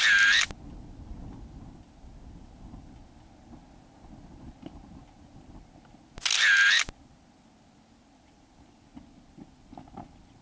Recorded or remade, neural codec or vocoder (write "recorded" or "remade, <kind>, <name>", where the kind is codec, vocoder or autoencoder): recorded